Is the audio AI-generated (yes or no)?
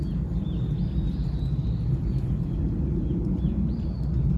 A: no